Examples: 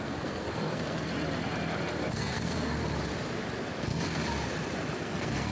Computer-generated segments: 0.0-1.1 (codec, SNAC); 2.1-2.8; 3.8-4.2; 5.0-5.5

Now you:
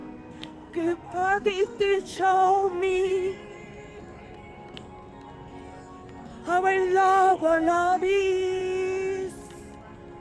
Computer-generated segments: 0.0-3.1 (codec, SNAC); 7.3-8.6

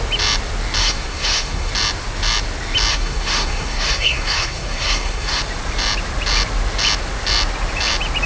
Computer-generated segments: 0.8-1.7 (codec, SNAC); 2.9-5.4

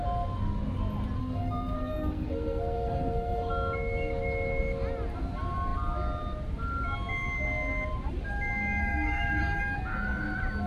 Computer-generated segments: 1.2-3.5 (codec, SNAC); 8.8-9.6

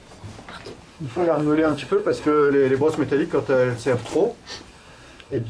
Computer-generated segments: 0.9-2.5 (codec, SNAC); 4.7-5.5

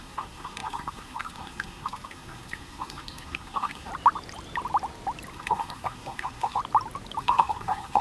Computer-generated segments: 0.0-3.9 (codec, SNAC); 5.3-6.6; 7.2-8.0

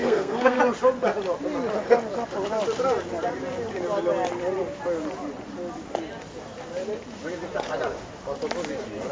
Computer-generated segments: 0.0-0.6 (codec, SNAC)

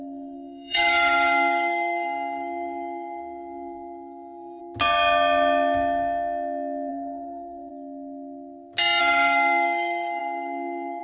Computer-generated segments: 0.0-4.6 (codec, SNAC); 6.9-7.7; 9.0-11.0